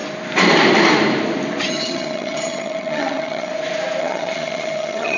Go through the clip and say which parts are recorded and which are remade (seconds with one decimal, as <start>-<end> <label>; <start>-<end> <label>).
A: 0.0-1.7 recorded; 1.7-3.5 remade; 3.5-4.0 recorded; 4.0-5.2 remade